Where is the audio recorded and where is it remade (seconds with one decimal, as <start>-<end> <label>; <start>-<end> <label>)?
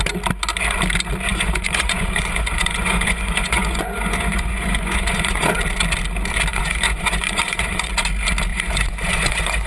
0.0-1.3 recorded; 1.3-5.6 remade; 5.6-6.5 recorded; 6.5-7.9 remade; 7.9-8.5 recorded; 8.5-9.7 remade